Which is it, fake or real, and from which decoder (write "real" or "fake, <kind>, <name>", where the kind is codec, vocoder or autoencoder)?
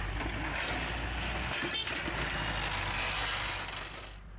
real